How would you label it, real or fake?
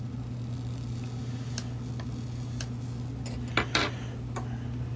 real